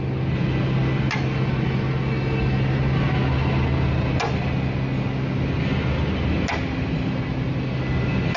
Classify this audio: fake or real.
real